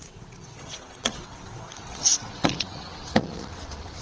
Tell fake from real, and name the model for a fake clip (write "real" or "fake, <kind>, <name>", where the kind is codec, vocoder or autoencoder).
fake, vocoder, WaveNeXt